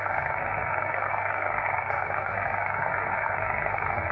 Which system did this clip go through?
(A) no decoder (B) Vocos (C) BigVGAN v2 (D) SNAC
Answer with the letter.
D